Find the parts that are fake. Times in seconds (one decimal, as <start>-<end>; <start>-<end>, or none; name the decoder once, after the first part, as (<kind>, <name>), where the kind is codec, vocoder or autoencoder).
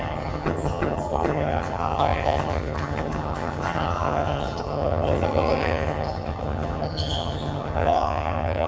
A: 0.0-8.7 (vocoder, HiFi-GAN)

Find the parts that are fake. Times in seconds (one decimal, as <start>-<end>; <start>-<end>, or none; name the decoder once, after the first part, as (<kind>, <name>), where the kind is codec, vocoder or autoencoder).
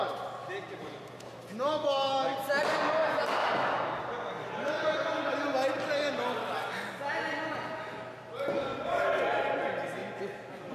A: 8.7-9.6 (vocoder, BigVGAN v2)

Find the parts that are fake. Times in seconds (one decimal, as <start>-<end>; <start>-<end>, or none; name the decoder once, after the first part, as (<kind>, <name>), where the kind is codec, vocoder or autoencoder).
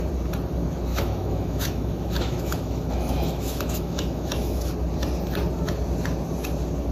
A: 0.9-4.7 (autoencoder, DAC-VAE)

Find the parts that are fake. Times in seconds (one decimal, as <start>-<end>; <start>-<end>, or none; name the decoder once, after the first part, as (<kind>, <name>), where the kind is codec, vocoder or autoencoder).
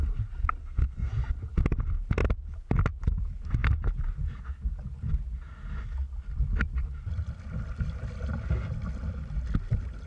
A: 0.6-1.1 (codec, SNAC)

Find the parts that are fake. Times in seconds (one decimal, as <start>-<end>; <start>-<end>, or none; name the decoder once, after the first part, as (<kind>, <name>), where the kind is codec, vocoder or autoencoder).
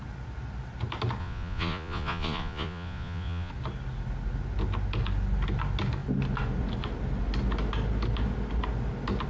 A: 1.2-3.5 (vocoder, Vocos)